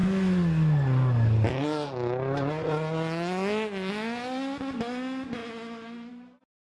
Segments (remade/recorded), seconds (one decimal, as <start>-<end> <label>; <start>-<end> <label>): 0.0-6.6 recorded